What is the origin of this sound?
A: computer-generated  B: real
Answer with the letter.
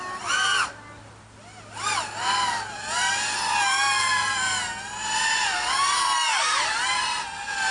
B